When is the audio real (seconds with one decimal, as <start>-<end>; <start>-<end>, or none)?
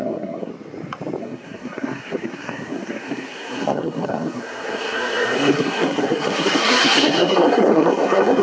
0.5-1.2